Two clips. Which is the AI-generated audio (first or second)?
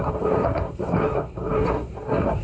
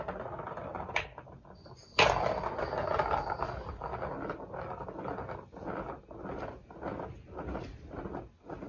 first